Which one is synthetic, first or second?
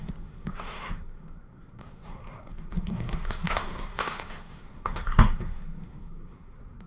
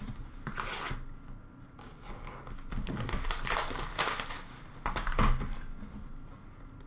first